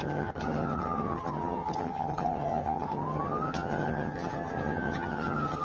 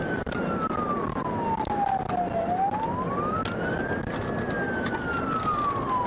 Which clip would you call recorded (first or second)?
second